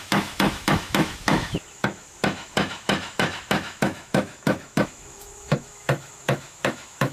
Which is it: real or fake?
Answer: fake